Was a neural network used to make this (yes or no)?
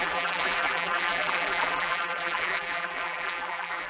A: yes